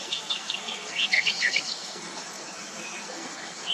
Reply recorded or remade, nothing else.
remade